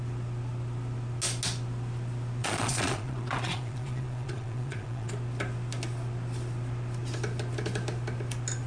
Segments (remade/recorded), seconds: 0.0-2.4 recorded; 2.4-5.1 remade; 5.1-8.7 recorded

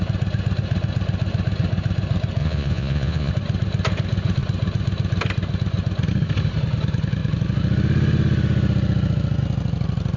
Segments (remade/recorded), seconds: 0.0-2.4 recorded; 2.4-3.3 remade; 3.3-10.2 recorded

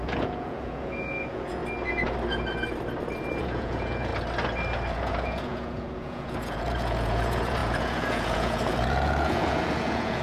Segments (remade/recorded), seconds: 0.0-1.6 remade; 1.6-3.4 recorded; 3.4-4.1 remade; 4.1-4.9 recorded; 4.9-10.2 remade

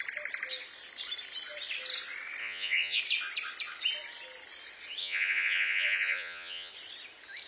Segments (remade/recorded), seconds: 0.0-2.4 recorded; 2.4-3.0 remade; 3.0-5.0 recorded; 5.0-6.7 remade; 6.7-7.5 recorded

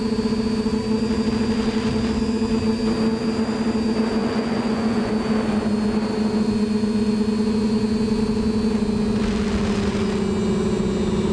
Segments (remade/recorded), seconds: 0.0-4.2 recorded; 4.2-5.1 remade; 5.1-11.3 recorded

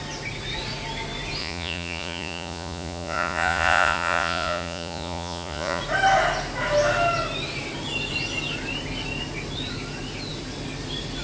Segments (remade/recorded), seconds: 0.0-1.4 recorded; 1.4-5.8 remade; 5.8-11.2 recorded

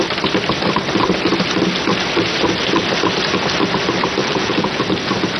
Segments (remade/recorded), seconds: 0.0-4.2 recorded; 4.2-4.8 remade; 4.8-5.4 recorded

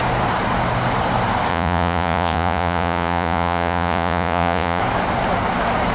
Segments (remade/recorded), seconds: 0.0-1.5 recorded; 1.5-4.8 remade; 4.8-5.9 recorded